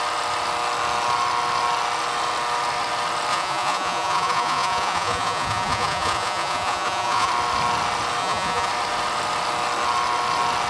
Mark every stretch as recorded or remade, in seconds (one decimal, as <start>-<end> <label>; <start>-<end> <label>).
0.0-3.3 recorded; 3.3-7.3 remade; 7.3-8.2 recorded; 8.2-8.7 remade; 8.7-10.7 recorded